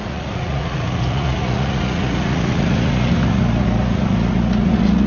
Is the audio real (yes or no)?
no